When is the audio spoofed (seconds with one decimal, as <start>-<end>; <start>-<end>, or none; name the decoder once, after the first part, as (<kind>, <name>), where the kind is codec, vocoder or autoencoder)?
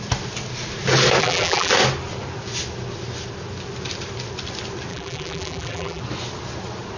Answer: 1.2-1.7 (vocoder, BigVGAN v2); 4.9-6.0